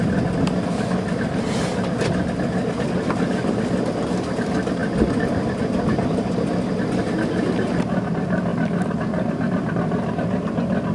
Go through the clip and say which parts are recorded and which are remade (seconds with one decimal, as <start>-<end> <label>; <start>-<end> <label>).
0.0-10.9 recorded